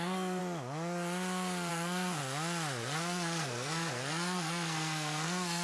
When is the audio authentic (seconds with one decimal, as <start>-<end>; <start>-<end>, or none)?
0.4-1.7; 2.2-2.8